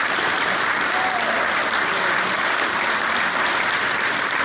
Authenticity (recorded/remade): recorded